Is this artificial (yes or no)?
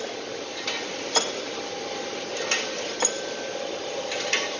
no